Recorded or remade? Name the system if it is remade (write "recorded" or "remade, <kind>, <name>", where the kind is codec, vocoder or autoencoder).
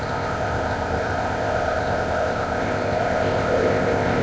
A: remade, codec, ZipCodec